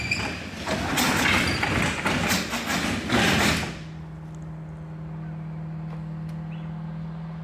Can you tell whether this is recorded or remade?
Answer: recorded